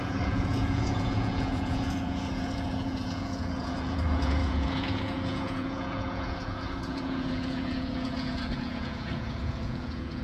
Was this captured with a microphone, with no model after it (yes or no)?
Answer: no